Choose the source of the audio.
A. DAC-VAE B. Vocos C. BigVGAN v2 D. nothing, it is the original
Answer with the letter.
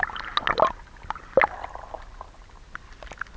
D